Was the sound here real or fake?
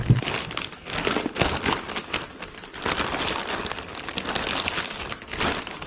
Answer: real